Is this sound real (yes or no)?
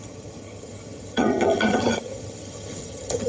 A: no